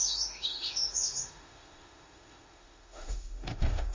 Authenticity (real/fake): fake